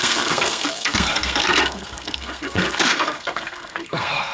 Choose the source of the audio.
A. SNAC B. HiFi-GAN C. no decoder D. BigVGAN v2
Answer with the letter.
A